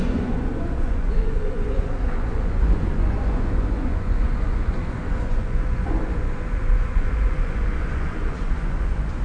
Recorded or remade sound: remade